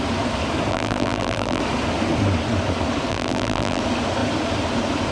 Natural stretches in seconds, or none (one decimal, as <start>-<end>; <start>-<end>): 0.0-0.7; 1.6-3.1; 3.8-5.1